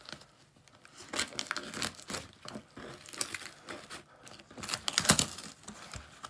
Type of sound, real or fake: real